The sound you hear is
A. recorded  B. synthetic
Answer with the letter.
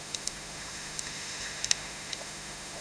B